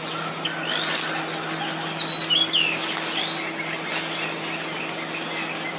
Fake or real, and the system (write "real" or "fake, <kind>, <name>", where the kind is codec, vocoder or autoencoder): real